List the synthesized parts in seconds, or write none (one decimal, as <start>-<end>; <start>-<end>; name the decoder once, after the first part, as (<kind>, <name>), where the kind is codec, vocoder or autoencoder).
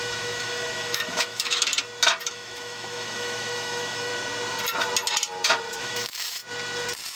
0.0-1.7 (autoencoder, DAC-VAE); 2.3-4.1; 5.7-6.4